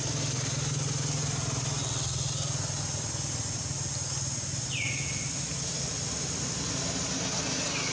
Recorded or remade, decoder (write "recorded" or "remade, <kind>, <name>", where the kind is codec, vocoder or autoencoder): recorded